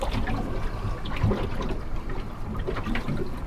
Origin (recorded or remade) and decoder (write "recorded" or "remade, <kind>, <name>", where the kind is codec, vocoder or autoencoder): recorded